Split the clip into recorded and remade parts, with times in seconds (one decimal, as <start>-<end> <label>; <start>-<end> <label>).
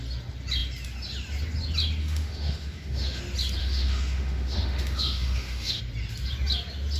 0.0-2.0 recorded; 2.0-3.2 remade; 3.2-3.6 recorded; 3.6-5.8 remade; 5.8-7.0 recorded